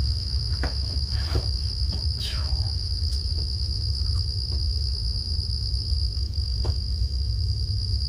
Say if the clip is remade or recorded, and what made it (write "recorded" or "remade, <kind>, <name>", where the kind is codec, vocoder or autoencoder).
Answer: remade, autoencoder, DAC-VAE